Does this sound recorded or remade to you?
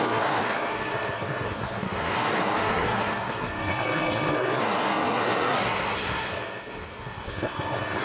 remade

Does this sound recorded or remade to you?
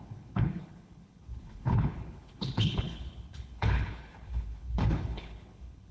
remade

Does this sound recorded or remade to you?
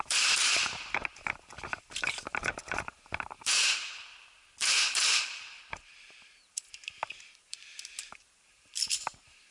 remade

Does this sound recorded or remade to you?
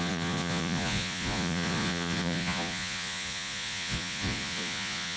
remade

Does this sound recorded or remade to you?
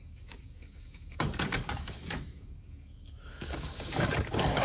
remade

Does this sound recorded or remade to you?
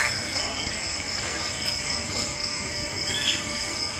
remade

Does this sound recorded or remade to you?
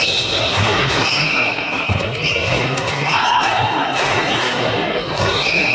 remade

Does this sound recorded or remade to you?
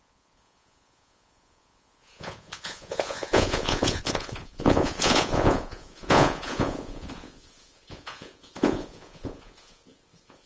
remade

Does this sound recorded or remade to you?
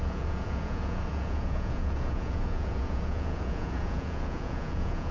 remade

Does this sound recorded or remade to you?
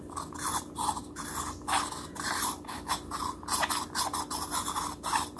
recorded